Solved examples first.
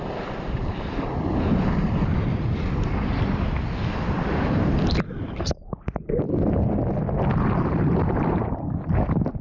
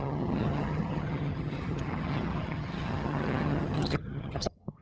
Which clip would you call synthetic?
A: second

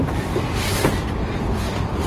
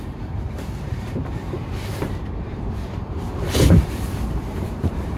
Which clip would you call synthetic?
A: second